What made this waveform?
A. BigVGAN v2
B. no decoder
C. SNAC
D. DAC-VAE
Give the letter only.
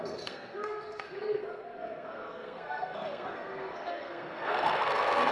C